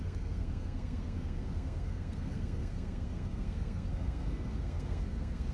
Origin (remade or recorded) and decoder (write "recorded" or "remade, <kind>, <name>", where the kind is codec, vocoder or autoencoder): remade, codec, SNAC